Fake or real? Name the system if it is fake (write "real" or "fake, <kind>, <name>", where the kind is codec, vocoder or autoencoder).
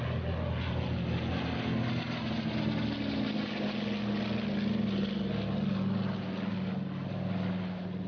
real